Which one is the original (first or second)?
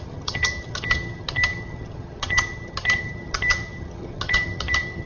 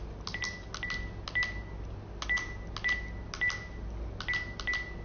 second